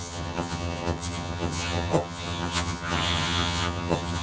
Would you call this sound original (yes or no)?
no